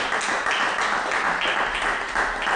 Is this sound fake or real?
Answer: real